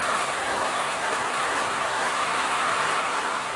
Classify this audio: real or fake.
fake